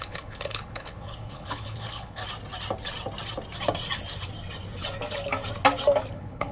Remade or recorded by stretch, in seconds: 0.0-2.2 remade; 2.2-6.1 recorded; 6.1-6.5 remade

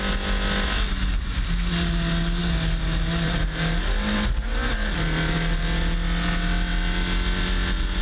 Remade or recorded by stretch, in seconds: 0.0-8.0 recorded

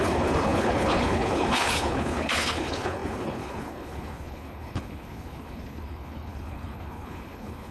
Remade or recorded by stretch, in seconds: 0.0-7.7 remade

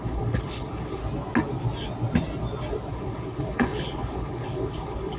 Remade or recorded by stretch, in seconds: 0.0-1.0 remade; 1.0-2.9 recorded; 2.9-5.2 remade